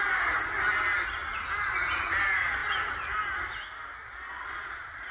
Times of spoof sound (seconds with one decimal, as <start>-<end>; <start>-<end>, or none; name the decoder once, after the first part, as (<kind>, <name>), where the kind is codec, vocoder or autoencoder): 4.0-5.1 (vocoder, Vocos)